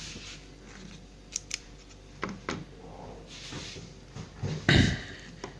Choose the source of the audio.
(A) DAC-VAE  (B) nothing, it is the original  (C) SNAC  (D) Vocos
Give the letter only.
B